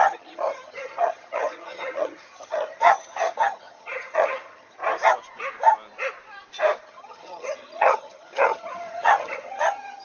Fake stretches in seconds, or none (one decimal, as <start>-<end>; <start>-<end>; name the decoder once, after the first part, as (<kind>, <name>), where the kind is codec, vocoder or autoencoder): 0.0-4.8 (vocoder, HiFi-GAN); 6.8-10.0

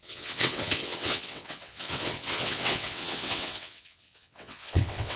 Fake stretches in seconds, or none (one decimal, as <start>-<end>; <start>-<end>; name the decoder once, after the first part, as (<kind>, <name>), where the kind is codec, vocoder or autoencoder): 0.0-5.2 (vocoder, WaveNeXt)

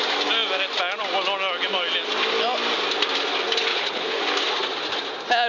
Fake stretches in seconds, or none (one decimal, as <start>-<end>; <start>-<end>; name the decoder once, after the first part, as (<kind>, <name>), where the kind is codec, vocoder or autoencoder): 3.7-4.2 (codec, HILCodec)

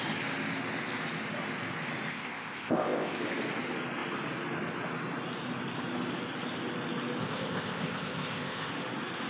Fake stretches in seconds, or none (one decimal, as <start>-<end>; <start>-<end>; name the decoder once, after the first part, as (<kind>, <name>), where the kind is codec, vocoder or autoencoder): 2.1-3.2 (codec, ZipCodec); 7.2-8.7

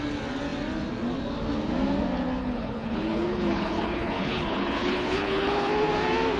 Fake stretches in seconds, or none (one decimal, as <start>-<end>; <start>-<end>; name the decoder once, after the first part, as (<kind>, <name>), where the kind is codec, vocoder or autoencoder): 2.4-5.7 (codec, HILCodec)